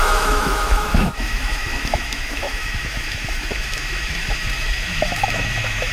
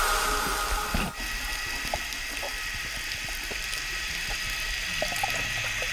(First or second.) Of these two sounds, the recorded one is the second